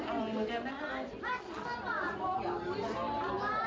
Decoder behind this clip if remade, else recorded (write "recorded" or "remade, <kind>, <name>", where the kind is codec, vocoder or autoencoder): recorded